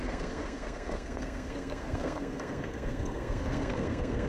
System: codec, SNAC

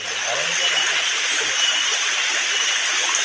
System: none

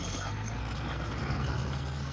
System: codec, SNAC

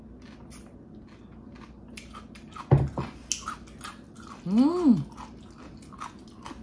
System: none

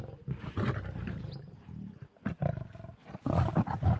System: none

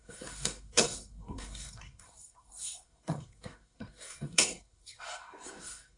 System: codec, SNAC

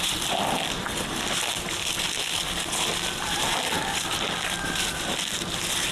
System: none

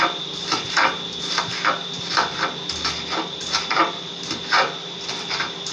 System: none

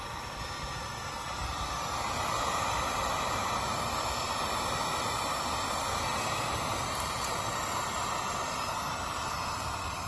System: none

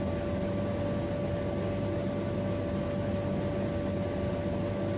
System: none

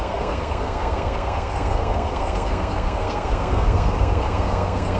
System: codec, SNAC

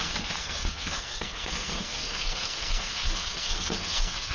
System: codec, SNAC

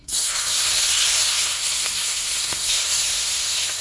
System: codec, SNAC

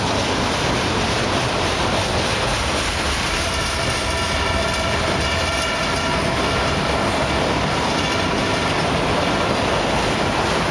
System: none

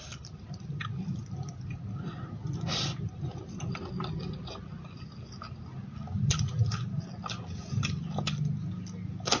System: none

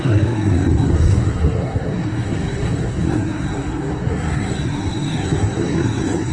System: codec, SNAC